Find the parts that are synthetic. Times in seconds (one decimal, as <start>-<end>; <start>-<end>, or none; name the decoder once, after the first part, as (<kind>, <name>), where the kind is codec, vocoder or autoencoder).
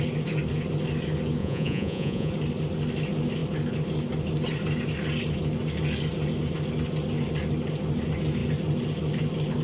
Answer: 1.4-2.3 (vocoder, Vocos)